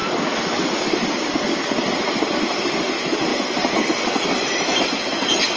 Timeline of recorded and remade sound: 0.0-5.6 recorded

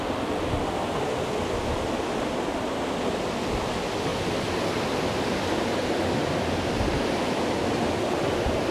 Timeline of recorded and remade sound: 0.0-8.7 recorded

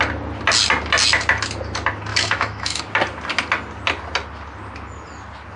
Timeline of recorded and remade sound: 0.0-2.1 recorded; 2.1-2.8 remade; 2.8-5.6 recorded